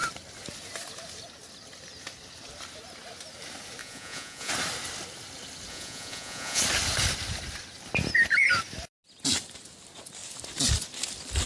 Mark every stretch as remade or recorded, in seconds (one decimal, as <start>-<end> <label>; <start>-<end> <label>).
0.0-3.8 recorded; 3.8-4.5 remade; 4.5-5.7 recorded; 5.7-6.6 remade; 6.6-11.5 recorded